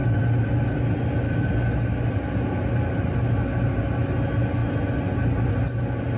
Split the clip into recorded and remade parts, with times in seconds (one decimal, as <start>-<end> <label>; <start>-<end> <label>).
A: 0.0-6.2 recorded